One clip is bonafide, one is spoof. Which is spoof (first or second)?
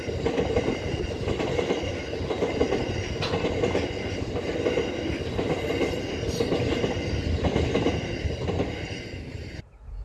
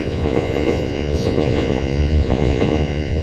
second